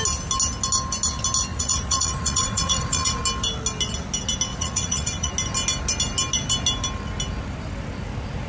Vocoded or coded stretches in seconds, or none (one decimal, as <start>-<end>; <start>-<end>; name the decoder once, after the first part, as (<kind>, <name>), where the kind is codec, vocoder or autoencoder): 1.5-3.2 (vocoder, Vocos); 4.5-5.3